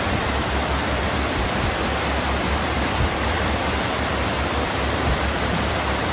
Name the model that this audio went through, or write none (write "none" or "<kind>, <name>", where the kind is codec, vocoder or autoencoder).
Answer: vocoder, BigVGAN v2